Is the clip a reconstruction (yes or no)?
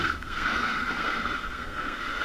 yes